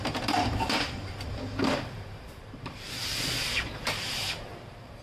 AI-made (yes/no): yes